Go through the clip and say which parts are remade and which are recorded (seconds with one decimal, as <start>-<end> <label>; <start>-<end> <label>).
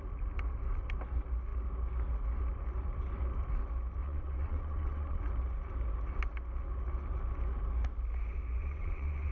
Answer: 0.0-4.0 recorded; 4.0-5.2 remade; 5.2-8.6 recorded; 8.6-9.3 remade